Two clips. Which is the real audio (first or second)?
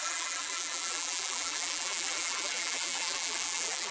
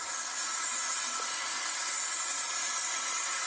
second